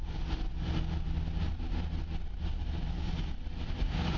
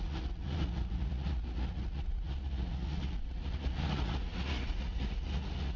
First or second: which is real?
first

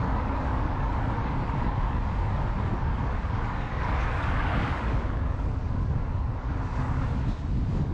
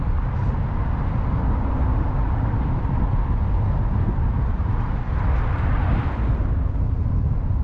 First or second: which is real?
second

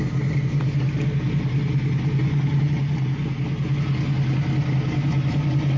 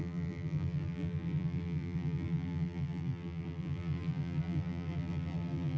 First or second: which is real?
first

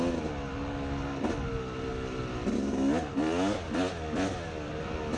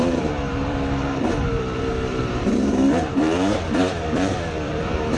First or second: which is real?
first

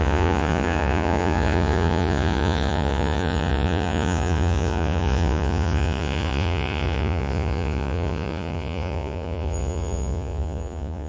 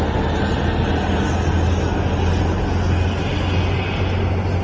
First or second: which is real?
second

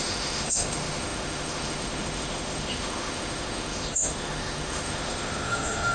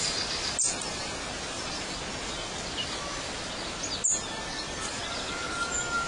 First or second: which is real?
second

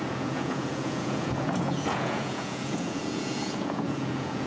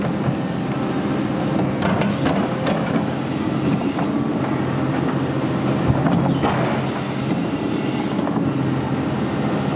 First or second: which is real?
second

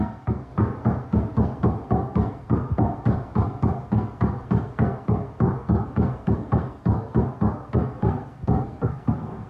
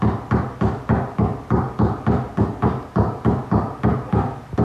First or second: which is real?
second